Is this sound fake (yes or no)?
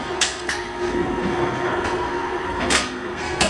yes